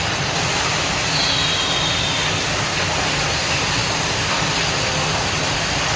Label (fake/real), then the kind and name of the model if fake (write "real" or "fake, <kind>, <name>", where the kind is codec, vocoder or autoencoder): real